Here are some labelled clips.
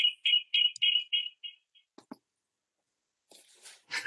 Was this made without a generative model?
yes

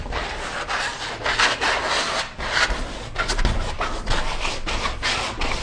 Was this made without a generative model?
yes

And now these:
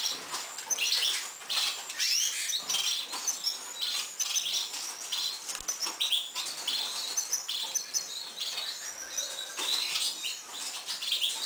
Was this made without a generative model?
yes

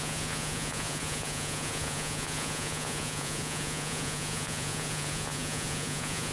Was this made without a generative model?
no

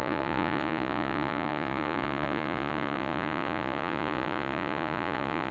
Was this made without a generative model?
no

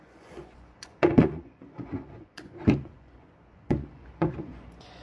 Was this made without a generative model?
no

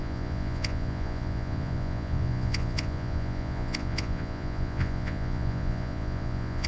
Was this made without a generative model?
no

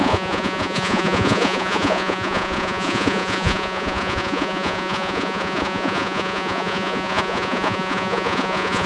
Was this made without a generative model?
no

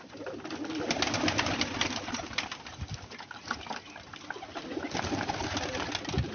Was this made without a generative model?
yes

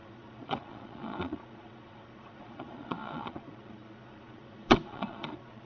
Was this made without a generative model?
no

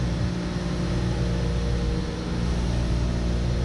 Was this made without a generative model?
yes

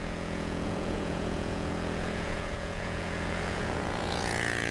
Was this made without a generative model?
no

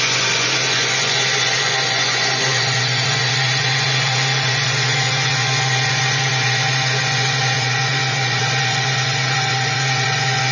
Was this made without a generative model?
no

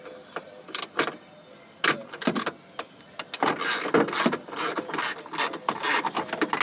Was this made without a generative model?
yes